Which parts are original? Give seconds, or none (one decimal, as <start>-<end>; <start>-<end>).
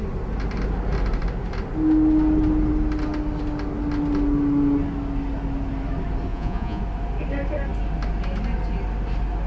0.0-6.3; 6.8-9.5